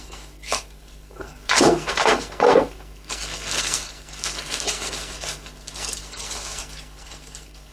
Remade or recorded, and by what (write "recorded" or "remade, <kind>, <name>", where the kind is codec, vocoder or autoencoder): remade, codec, SNAC